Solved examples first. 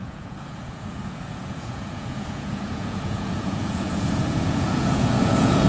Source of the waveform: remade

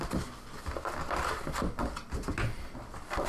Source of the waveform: recorded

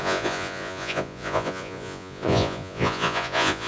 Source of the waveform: remade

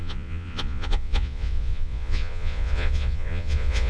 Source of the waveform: remade